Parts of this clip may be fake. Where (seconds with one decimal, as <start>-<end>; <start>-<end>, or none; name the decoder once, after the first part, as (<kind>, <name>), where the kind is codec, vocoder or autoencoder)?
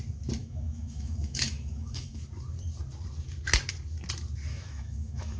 0.4-2.2 (autoencoder, DAC-VAE); 4.5-5.4